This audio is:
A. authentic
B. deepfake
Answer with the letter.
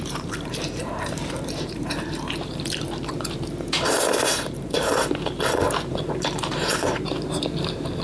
B